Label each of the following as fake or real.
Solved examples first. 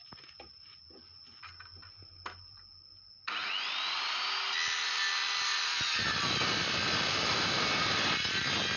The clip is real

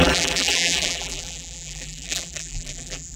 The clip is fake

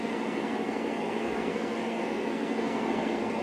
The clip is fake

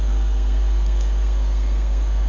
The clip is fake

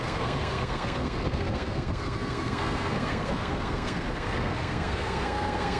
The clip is fake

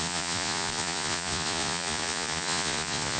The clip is fake